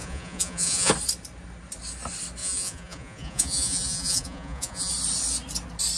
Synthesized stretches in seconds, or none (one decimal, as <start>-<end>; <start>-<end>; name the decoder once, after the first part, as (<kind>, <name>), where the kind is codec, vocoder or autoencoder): 0.0-0.9 (vocoder, Vocos); 2.4-4.9